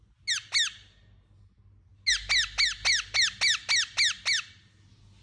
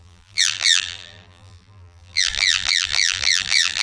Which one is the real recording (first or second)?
first